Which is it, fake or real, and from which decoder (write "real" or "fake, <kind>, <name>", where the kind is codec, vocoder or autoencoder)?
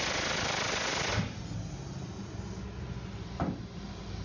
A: real